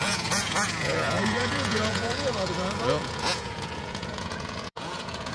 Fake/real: fake